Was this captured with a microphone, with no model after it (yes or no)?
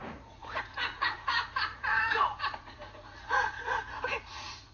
no